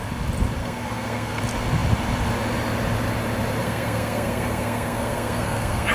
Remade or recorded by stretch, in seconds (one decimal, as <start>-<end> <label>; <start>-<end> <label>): 0.0-0.6 recorded; 0.6-1.4 remade; 1.4-3.6 recorded; 3.6-5.9 remade

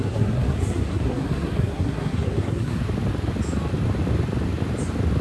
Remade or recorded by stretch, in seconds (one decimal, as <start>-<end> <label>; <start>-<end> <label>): 0.0-2.8 remade; 2.8-5.2 recorded

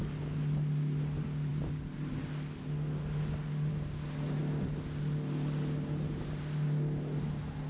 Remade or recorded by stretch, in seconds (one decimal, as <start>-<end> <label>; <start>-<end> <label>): 0.0-7.7 recorded

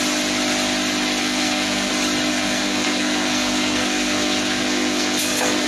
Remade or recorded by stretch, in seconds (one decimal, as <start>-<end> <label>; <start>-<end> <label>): 0.0-1.2 recorded; 1.2-1.9 remade; 1.9-2.3 recorded; 2.3-5.7 remade

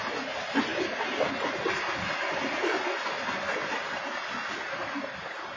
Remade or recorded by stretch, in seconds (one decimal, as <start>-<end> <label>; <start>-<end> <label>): 0.0-5.6 recorded